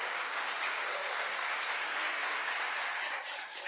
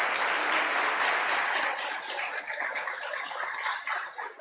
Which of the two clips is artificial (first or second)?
first